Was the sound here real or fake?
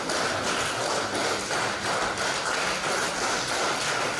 real